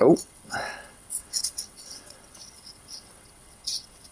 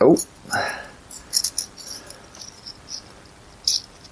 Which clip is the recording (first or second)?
second